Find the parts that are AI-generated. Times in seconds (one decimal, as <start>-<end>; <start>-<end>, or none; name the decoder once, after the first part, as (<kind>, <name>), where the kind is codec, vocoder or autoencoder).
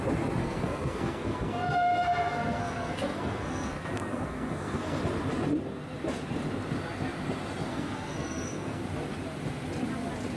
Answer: 0.4-5.0 (codec, SNAC); 7.7-8.8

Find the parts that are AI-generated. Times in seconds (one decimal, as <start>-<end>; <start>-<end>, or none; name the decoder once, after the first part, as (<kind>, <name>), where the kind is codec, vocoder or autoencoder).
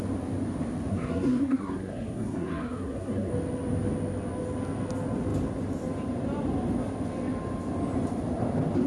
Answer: 0.9-3.3 (codec, SNAC)